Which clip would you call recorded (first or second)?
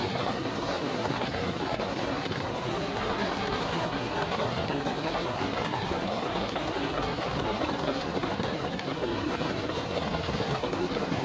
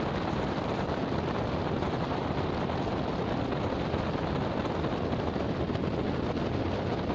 second